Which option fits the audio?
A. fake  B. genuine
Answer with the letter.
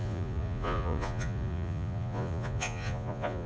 A